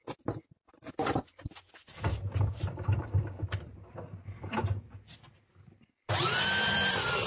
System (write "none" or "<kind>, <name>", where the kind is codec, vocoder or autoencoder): none